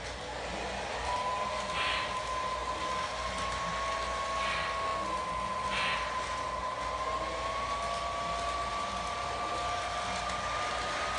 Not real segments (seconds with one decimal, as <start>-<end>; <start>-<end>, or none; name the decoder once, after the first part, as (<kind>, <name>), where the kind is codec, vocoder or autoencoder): none